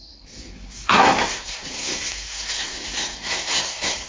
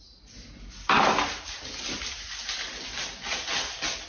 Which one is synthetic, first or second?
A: first